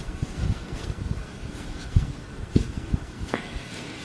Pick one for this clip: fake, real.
fake